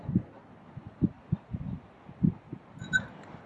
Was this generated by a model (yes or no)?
no